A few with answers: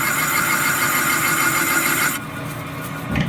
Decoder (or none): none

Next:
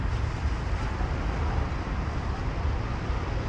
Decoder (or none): none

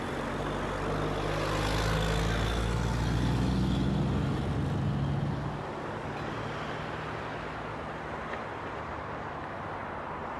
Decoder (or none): none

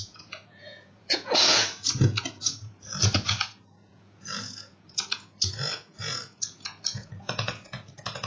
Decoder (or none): vocoder, Vocos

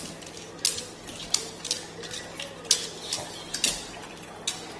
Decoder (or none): none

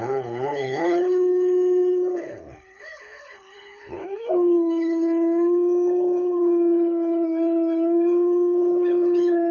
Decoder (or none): codec, HILCodec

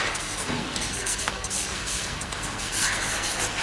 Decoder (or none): codec, SNAC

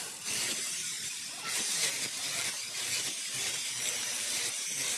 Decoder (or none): vocoder, BigVGAN v2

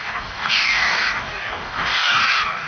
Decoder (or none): codec, DAC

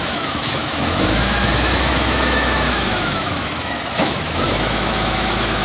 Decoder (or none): autoencoder, DAC-VAE